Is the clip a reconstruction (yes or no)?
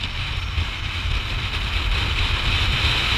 no